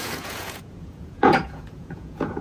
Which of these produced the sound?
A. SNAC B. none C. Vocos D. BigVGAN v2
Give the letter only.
C